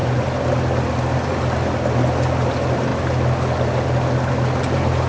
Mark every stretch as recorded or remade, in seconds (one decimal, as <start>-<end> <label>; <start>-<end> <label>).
0.0-5.1 recorded